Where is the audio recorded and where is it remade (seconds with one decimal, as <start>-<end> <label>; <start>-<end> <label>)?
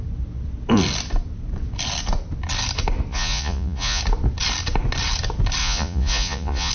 0.0-3.1 recorded; 3.1-4.0 remade; 4.0-5.6 recorded; 5.6-6.7 remade